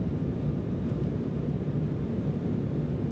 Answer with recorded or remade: recorded